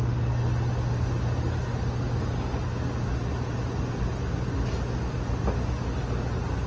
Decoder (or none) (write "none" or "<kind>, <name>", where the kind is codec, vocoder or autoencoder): none